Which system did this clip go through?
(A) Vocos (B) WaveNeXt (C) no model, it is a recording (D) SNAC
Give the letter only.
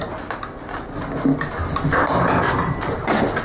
C